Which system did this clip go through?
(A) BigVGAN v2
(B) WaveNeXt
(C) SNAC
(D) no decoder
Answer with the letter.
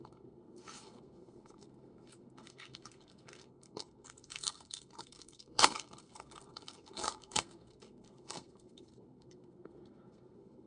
C